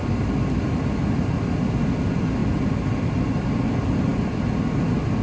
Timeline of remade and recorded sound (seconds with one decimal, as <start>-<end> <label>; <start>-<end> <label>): 0.0-5.2 recorded